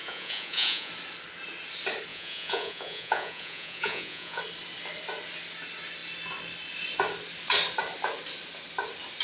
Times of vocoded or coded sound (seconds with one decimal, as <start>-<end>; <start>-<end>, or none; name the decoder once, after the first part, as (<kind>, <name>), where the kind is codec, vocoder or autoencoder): 0.0-0.9 (vocoder, Vocos); 2.1-4.4